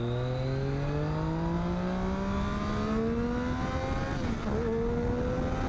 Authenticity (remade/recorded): recorded